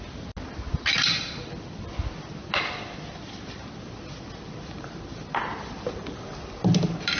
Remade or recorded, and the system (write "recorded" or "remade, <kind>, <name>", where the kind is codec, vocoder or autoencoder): recorded